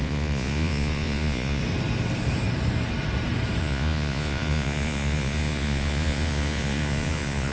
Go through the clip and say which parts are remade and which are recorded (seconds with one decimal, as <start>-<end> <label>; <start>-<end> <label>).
0.0-1.6 remade; 1.6-3.6 recorded; 3.6-7.5 remade